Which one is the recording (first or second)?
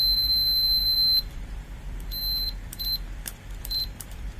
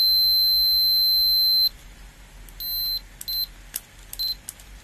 second